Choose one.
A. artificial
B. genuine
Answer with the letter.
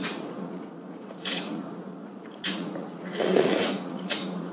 A